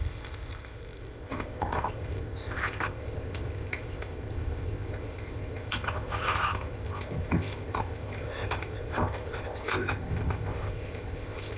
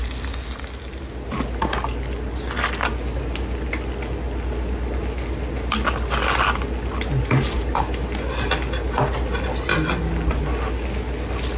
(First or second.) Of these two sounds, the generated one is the first